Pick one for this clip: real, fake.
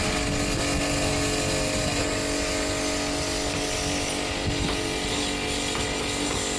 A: real